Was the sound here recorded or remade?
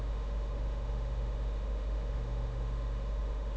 remade